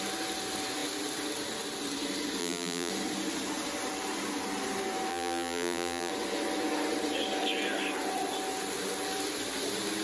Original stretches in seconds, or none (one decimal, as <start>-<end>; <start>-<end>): 0.0-2.4; 2.9-5.1; 6.1-10.0

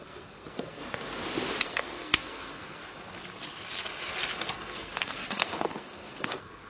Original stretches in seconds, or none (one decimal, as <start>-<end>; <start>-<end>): 0.8-1.6; 2.8-4.4

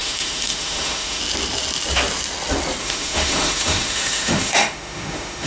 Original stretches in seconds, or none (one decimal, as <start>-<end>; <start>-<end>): 1.2-2.8

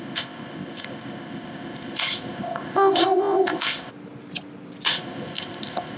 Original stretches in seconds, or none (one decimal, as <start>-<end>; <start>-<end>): 3.9-4.9

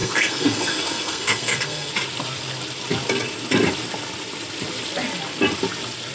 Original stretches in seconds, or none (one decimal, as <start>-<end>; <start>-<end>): 1.9-6.1

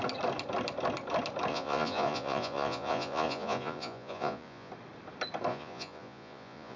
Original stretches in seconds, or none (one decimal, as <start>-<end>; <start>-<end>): 0.0-1.5; 4.7-5.5

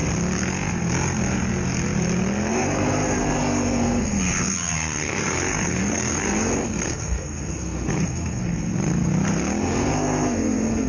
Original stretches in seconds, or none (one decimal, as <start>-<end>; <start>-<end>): 0.0-2.5; 8.7-9.6